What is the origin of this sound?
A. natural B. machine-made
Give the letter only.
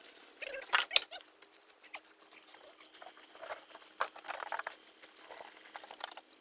A